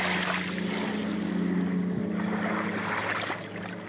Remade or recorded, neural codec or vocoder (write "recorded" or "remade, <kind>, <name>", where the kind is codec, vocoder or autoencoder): recorded